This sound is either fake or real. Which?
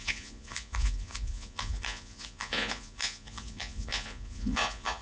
fake